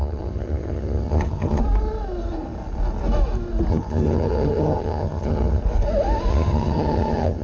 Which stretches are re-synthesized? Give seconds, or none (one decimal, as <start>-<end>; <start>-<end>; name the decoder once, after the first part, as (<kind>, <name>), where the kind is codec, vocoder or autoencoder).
0.0-1.6 (vocoder, HiFi-GAN); 3.7-5.6; 6.3-7.4